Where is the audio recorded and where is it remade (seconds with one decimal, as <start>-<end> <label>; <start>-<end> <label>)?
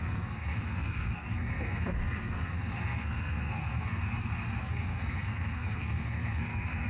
0.0-4.0 remade; 4.0-4.6 recorded; 4.6-6.9 remade